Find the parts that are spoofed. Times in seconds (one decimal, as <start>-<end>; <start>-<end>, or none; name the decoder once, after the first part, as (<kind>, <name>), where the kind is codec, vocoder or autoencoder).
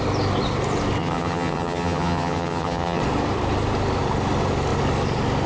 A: 1.0-3.0 (vocoder, HiFi-GAN)